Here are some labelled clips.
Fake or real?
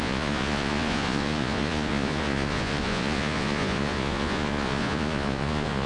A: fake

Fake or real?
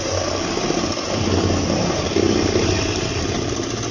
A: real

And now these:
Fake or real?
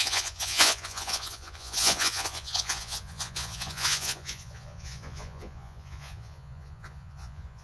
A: fake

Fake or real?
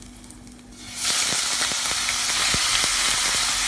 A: real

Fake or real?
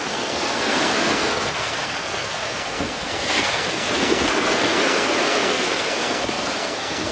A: fake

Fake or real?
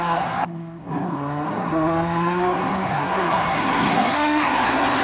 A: fake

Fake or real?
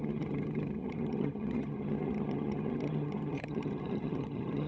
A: fake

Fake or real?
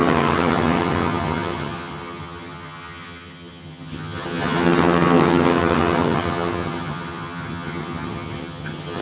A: fake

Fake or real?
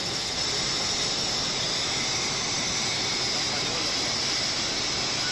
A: real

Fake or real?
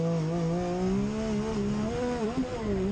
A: real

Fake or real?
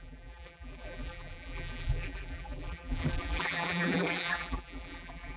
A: fake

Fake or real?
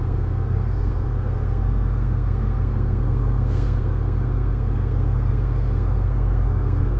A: fake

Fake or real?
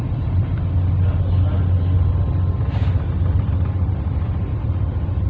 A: real